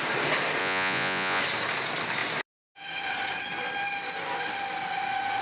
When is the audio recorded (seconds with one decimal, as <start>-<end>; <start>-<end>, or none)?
0.0-0.6; 1.4-5.4